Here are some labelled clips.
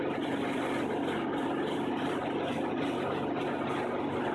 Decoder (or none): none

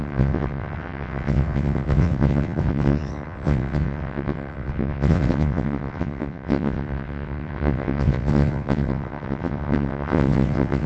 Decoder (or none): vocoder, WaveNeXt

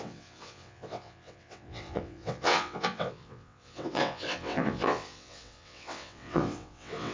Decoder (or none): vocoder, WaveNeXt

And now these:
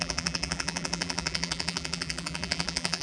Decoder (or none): vocoder, BigVGAN v2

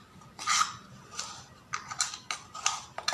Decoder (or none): none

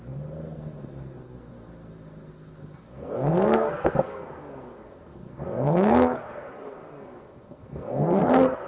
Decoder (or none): codec, SNAC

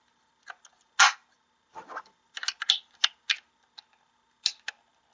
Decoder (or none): none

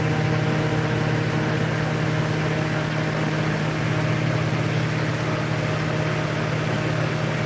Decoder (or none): none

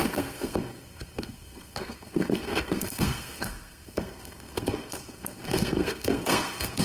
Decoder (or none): codec, SNAC